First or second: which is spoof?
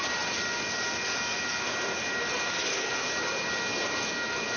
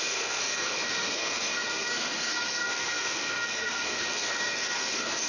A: second